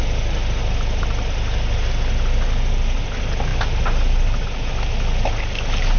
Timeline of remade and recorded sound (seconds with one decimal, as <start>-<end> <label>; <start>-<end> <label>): 0.0-6.0 recorded